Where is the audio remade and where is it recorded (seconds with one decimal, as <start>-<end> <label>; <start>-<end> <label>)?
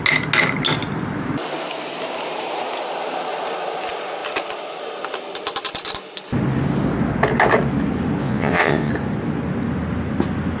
0.0-8.2 recorded; 8.2-8.9 remade; 8.9-10.6 recorded